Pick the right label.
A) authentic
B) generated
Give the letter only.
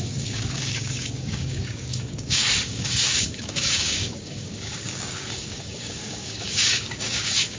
B